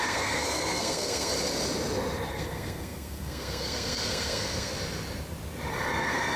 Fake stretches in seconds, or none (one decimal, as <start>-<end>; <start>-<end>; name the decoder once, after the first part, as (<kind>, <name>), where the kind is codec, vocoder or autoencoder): 0.0-1.3 (codec, SNAC); 2.3-4.7; 5.7-6.4